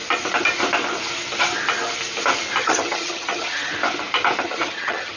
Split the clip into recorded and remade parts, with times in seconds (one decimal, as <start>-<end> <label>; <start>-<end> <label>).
0.0-2.6 recorded; 2.6-3.7 remade; 3.7-4.4 recorded; 4.4-5.2 remade